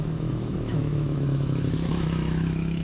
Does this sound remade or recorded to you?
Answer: remade